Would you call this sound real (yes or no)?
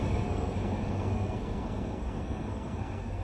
no